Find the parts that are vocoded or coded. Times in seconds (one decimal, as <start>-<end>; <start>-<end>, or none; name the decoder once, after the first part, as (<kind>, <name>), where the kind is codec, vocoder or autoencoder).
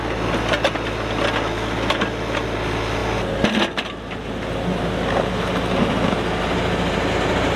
none